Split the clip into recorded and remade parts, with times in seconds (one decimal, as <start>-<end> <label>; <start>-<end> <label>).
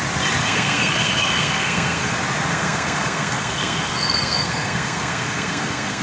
0.0-0.4 recorded; 0.4-2.1 remade; 2.1-2.5 recorded; 2.5-6.0 remade